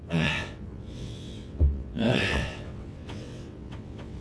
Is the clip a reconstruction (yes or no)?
yes